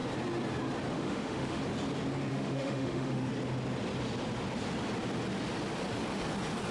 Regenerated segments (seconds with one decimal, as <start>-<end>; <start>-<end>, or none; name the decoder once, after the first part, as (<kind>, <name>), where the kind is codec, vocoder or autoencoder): 0.9-1.6 (autoencoder, DAC-VAE); 2.3-3.3